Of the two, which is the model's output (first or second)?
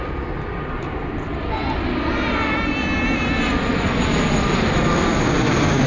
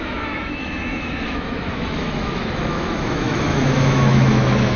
second